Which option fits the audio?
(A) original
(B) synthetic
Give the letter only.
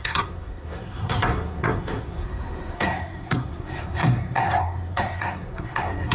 B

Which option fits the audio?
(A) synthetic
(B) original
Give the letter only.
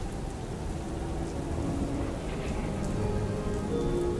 B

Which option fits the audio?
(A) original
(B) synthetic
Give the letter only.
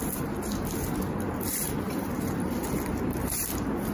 B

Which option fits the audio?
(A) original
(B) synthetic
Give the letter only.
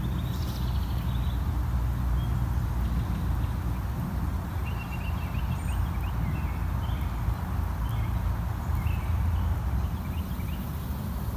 A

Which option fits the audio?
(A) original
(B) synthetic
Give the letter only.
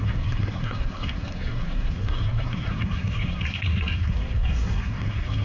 B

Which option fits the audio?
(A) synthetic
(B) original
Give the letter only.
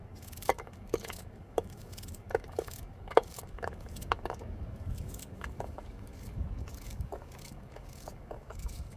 A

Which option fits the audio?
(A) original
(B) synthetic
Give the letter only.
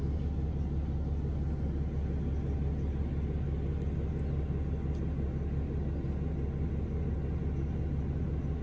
A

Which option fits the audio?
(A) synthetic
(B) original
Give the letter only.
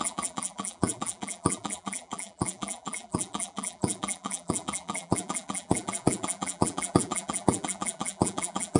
A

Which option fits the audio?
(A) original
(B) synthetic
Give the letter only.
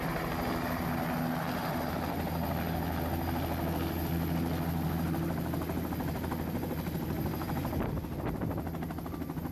A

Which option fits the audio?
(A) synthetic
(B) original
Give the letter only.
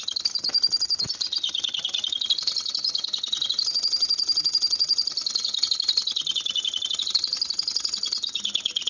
B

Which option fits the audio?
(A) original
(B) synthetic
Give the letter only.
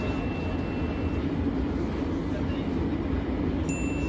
A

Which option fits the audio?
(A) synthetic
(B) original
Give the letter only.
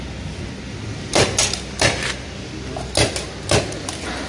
B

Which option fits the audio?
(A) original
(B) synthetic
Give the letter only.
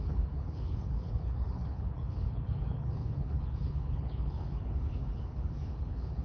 B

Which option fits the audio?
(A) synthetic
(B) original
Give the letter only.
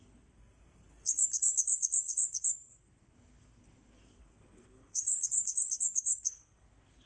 A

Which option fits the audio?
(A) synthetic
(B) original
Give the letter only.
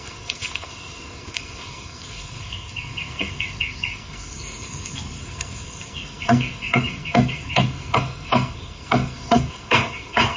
A